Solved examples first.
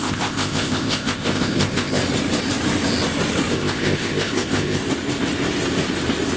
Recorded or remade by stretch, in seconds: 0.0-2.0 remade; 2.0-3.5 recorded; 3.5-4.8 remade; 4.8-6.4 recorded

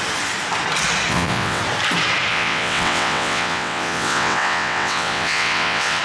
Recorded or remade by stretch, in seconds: 0.0-1.1 recorded; 1.1-1.6 remade; 1.6-2.3 recorded; 2.3-6.0 remade

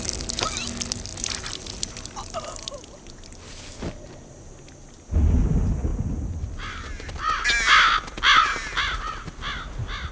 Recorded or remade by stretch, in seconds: 0.0-10.1 recorded

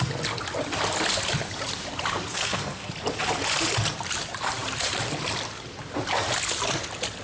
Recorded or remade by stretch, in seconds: 0.0-2.3 recorded; 2.3-2.9 remade; 2.9-7.2 recorded

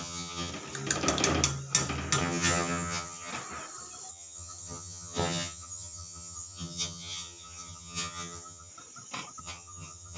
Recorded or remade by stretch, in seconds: 0.0-0.5 remade; 0.5-2.2 recorded; 2.2-3.3 remade; 3.3-4.1 recorded; 4.1-8.7 remade; 8.7-9.4 recorded; 9.4-10.2 remade

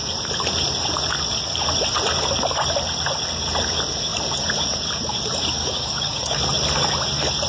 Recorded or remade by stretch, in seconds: 0.0-5.6 recorded; 5.6-6.4 remade; 6.4-7.5 recorded

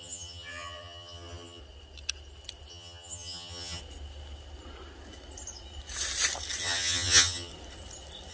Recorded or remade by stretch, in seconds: 0.0-1.6 remade; 1.6-2.7 recorded; 2.7-3.8 remade; 3.8-6.6 recorded; 6.6-7.5 remade; 7.5-8.3 recorded